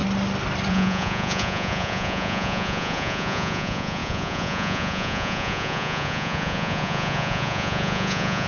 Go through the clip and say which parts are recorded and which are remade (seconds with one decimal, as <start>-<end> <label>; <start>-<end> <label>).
0.0-0.7 recorded; 0.7-8.5 remade